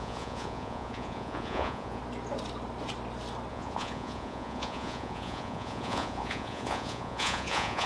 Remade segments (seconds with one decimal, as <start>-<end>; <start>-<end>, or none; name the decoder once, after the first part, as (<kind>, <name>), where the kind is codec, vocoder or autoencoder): 0.0-2.0 (vocoder, Vocos); 3.5-7.9